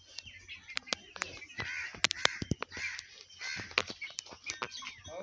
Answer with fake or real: real